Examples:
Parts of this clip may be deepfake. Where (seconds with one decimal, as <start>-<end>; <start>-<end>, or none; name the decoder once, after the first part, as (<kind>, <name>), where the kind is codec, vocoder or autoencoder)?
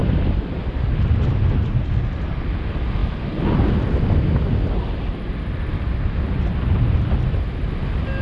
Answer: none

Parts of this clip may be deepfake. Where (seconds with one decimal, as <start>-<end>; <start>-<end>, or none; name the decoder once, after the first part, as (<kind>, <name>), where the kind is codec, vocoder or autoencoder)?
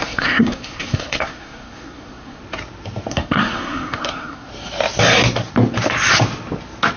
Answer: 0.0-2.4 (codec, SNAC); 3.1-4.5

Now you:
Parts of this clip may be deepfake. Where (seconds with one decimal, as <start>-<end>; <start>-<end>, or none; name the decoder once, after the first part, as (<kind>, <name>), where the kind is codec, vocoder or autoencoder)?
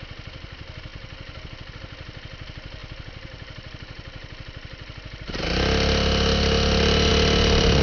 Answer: none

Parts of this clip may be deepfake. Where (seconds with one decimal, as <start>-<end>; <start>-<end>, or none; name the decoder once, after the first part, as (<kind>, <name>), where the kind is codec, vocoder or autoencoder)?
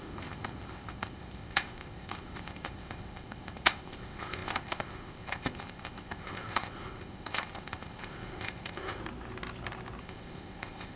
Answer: 0.0-9.0 (codec, ZipCodec); 10.0-11.0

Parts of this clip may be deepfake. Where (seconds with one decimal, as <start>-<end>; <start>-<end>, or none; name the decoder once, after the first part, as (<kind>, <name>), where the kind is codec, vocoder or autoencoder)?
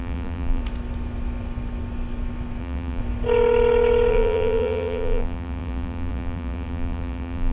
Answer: 0.0-0.6 (vocoder, BigVGAN v2); 2.6-3.0; 4.1-7.5